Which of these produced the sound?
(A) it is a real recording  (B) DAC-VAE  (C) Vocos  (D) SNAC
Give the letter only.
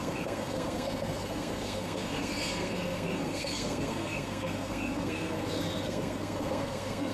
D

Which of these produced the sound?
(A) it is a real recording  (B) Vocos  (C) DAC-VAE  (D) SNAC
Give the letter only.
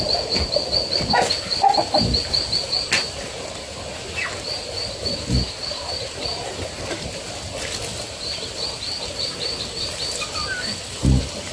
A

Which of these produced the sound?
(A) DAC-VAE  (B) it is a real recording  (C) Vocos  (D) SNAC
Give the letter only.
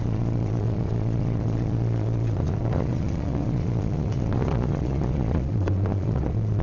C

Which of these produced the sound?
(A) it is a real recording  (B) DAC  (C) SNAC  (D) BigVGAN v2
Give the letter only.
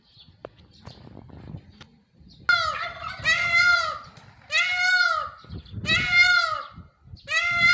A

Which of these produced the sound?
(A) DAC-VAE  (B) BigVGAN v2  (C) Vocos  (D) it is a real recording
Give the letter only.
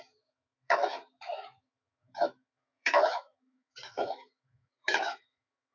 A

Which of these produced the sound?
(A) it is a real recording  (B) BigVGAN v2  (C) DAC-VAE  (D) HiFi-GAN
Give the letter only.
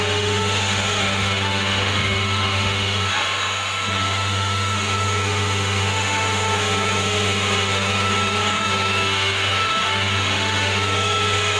C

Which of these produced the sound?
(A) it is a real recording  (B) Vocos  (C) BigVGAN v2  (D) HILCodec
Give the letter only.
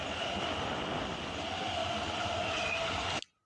A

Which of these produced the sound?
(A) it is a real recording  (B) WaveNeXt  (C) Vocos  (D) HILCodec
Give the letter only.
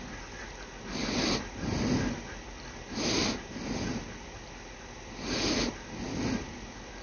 A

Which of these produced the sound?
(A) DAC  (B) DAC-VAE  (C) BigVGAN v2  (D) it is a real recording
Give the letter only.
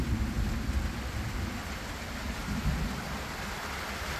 D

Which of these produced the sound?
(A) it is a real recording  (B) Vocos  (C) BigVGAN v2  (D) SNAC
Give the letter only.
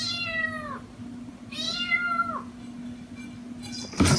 A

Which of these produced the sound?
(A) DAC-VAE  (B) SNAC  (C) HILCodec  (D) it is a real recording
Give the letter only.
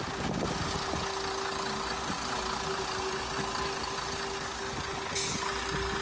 D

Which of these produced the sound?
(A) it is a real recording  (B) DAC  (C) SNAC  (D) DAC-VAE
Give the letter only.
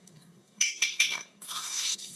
C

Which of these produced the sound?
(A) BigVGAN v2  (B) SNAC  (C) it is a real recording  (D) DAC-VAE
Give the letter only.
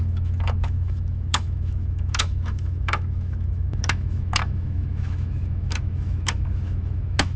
D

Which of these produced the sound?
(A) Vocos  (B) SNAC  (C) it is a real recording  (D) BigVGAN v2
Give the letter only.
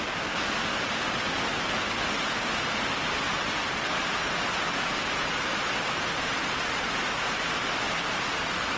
C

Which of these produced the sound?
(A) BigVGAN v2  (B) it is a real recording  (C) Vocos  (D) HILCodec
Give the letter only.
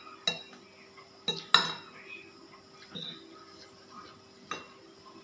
B